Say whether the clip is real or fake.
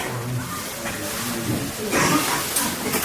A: real